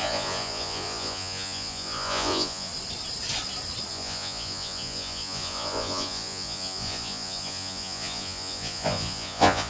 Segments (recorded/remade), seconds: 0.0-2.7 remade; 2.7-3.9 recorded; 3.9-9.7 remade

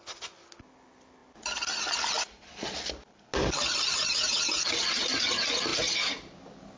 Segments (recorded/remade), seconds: 0.0-6.8 recorded

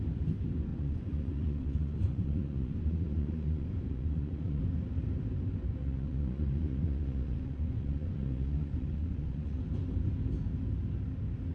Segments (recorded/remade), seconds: 0.0-0.7 recorded; 0.7-4.6 remade; 4.6-5.8 recorded; 5.8-9.6 remade; 9.6-11.5 recorded

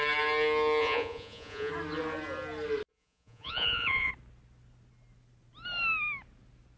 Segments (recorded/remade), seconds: 0.0-0.8 recorded; 0.8-1.7 remade; 1.7-2.9 recorded; 2.9-4.1 remade; 4.1-6.8 recorded

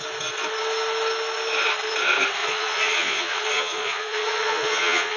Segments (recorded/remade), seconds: 0.0-2.4 recorded; 2.4-5.2 remade

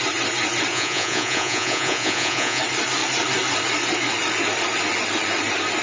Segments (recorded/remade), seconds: 0.0-0.7 recorded; 0.7-2.6 remade; 2.6-5.8 recorded